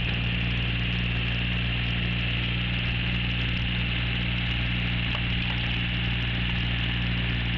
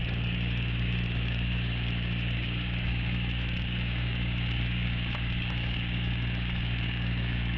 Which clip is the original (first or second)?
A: first